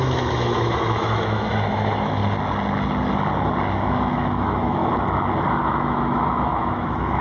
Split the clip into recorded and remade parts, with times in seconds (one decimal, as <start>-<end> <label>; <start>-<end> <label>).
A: 0.0-2.2 remade; 2.2-3.7 recorded; 3.7-4.8 remade; 4.8-5.5 recorded; 5.5-7.2 remade